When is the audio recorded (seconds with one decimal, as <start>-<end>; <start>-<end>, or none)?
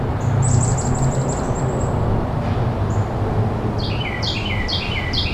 0.7-3.9